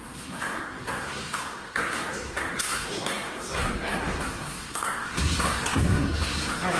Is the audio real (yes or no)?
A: no